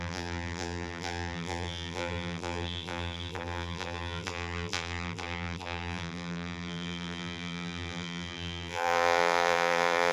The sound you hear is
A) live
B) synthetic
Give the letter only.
B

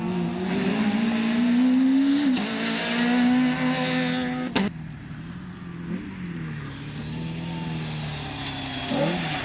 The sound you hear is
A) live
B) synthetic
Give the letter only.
A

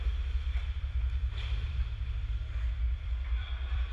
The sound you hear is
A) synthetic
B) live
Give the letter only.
A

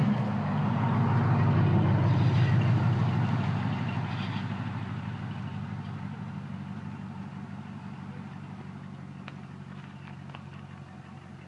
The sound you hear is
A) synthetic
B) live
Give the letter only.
B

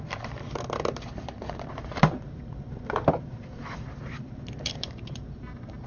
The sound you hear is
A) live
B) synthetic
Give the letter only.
B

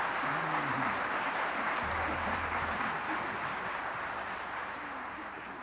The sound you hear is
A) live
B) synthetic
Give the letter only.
B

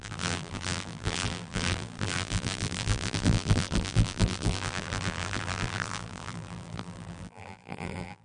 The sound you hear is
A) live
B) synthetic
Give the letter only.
B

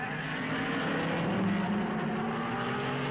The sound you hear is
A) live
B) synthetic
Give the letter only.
A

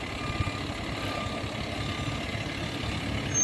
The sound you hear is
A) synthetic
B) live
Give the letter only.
B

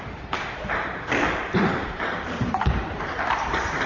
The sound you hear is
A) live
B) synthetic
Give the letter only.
B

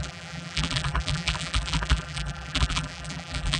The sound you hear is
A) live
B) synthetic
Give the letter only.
B